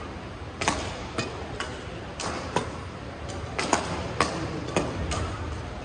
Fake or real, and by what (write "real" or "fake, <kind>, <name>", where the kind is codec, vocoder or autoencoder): real